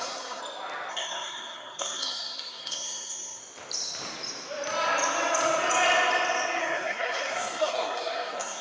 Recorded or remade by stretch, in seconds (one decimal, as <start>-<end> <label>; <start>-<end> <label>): 0.0-0.4 remade; 0.4-0.9 recorded; 0.9-3.4 remade; 3.4-6.6 recorded; 6.6-8.6 remade